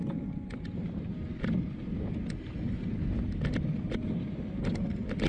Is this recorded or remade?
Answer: recorded